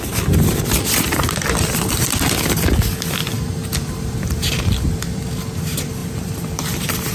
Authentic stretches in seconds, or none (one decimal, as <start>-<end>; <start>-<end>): 0.0-6.0